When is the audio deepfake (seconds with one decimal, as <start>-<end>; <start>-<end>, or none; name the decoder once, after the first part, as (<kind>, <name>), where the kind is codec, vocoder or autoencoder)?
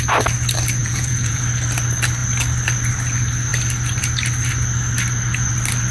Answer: 0.8-1.4 (vocoder, Vocos)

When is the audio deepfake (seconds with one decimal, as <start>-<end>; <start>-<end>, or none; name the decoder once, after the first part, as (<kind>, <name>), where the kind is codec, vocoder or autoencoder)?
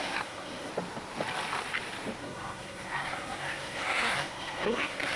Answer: 0.0-0.7 (codec, SNAC); 2.2-5.2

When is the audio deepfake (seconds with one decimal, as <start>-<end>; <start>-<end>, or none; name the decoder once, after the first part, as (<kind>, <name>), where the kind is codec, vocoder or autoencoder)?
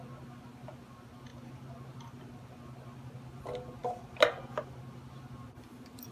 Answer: none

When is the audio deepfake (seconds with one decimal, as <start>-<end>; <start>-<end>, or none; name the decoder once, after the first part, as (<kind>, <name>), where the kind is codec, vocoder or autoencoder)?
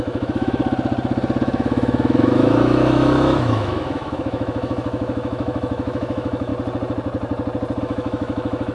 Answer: 0.0-0.6 (autoencoder, DAC-VAE); 1.4-6.5; 7.8-8.7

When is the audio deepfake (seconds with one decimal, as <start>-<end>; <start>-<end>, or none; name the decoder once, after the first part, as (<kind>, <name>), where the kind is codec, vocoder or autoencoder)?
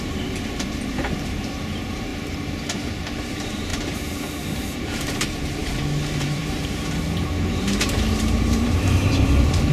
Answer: 0.0-2.1 (vocoder, BigVGAN v2); 2.9-9.7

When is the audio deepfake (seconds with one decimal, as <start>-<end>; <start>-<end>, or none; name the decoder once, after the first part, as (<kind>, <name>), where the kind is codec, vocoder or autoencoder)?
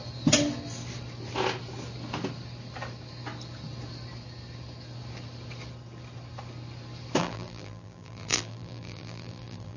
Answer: 7.2-9.8 (vocoder, BigVGAN v2)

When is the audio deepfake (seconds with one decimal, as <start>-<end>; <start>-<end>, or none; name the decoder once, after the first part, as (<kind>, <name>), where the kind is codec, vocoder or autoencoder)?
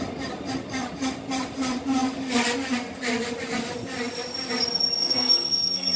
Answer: 5.0-6.0 (codec, SNAC)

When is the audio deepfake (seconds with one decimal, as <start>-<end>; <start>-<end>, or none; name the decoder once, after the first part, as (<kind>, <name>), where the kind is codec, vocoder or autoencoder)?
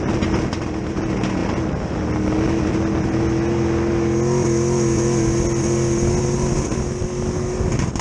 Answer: none